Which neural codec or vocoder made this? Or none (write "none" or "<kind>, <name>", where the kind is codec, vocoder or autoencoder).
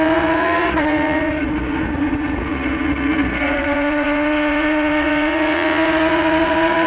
vocoder, Vocos